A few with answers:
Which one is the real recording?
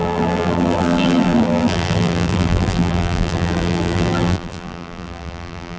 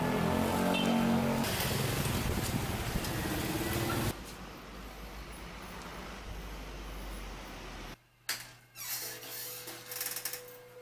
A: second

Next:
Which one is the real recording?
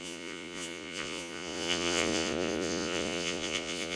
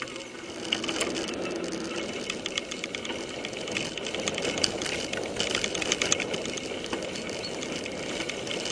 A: second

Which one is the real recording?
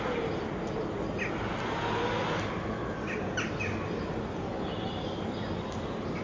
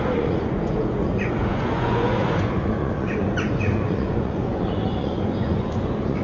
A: first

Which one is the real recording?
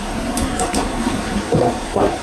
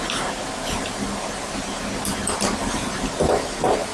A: second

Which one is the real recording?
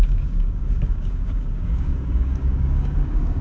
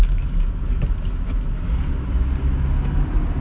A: second